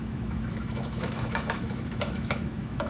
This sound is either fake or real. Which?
fake